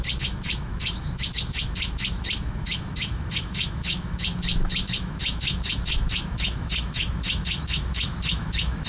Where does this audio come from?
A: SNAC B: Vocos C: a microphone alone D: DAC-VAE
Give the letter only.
D